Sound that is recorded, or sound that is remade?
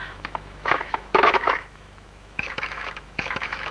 remade